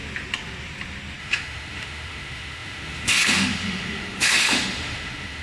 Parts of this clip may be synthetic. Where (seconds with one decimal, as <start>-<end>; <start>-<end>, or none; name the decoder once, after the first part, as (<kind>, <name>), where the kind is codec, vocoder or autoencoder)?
1.2-5.4 (autoencoder, DAC-VAE)